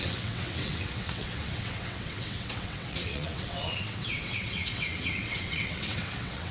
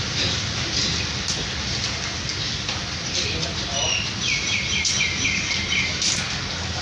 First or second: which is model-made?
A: first